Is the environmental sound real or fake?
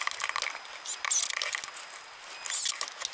real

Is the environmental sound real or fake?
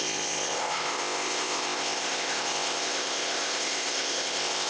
fake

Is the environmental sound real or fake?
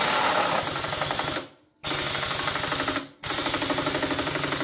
real